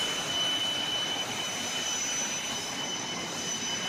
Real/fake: real